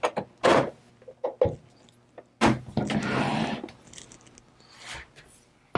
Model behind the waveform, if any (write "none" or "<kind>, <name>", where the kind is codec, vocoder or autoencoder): none